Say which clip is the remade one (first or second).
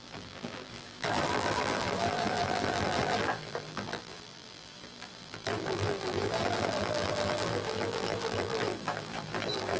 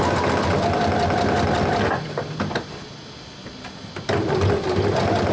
first